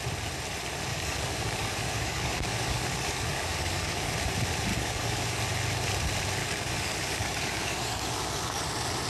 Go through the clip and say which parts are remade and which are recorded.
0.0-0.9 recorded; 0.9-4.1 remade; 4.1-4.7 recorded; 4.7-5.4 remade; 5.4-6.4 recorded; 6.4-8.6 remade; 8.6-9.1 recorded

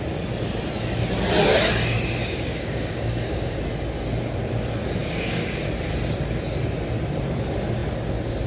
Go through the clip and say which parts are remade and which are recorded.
0.0-2.2 recorded; 2.2-3.6 remade; 3.6-5.0 recorded; 5.0-5.7 remade; 5.7-8.5 recorded

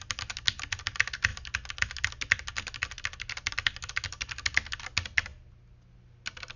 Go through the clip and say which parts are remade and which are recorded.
0.0-6.6 recorded

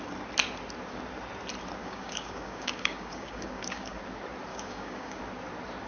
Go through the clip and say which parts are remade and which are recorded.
0.0-1.8 recorded; 1.8-4.0 remade; 4.0-4.5 recorded; 4.5-5.2 remade; 5.2-5.9 recorded

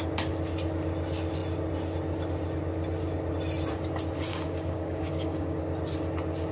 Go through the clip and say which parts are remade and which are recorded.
0.0-4.3 recorded; 4.3-5.6 remade; 5.6-6.5 recorded